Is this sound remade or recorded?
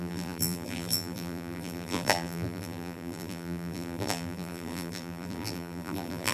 remade